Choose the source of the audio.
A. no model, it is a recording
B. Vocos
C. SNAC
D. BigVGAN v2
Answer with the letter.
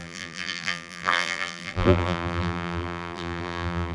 D